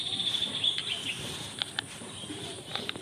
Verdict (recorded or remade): remade